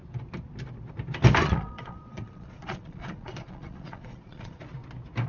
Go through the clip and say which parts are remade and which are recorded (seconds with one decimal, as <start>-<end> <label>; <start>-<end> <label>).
0.0-1.4 recorded; 1.4-4.6 remade; 4.6-5.3 recorded